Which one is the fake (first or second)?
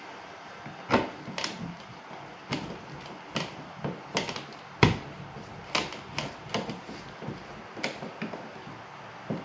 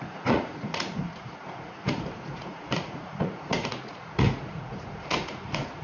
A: second